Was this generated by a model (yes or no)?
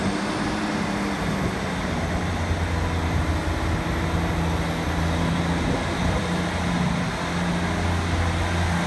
no